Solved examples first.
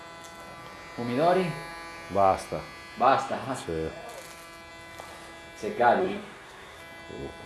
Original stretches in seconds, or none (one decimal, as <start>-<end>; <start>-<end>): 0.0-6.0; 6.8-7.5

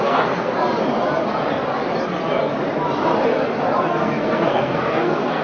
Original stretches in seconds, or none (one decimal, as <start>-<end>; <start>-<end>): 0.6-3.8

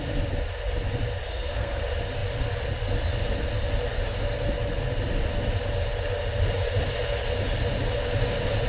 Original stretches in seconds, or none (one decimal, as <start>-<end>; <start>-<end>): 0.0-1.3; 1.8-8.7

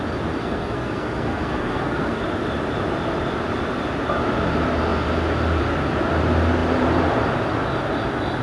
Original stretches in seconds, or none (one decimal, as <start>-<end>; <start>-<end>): 0.0-0.4; 2.2-8.4